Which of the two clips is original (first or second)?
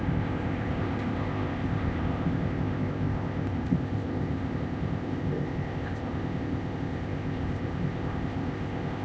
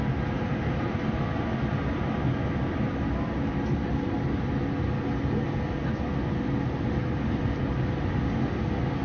second